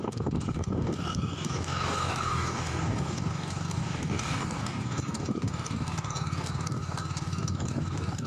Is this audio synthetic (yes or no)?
yes